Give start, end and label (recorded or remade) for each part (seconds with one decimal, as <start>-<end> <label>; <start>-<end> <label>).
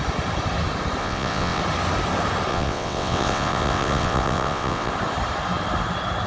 0.0-1.0 recorded; 1.0-1.6 remade; 1.6-2.5 recorded; 2.5-4.9 remade; 4.9-6.3 recorded